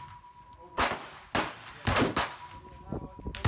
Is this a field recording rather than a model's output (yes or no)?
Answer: yes